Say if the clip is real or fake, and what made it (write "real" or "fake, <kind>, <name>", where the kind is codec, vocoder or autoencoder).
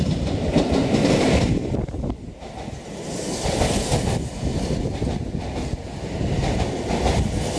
real